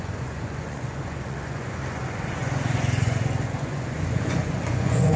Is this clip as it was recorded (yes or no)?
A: no